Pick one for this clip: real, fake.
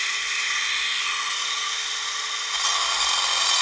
real